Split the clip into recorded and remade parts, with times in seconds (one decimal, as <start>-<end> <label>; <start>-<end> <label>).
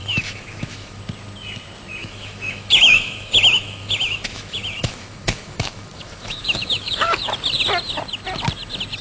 0.0-1.0 remade; 1.0-2.0 recorded; 2.0-7.2 remade; 7.2-9.0 recorded